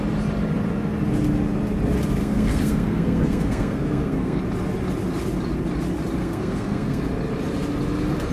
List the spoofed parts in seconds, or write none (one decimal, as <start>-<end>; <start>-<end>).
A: 2.2-4.4; 6.2-7.0